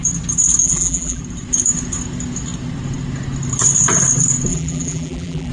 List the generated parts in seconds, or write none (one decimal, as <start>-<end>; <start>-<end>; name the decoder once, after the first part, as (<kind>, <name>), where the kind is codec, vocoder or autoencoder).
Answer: 0.6-1.2 (vocoder, BigVGAN v2); 4.5-5.5